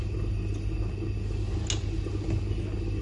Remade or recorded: recorded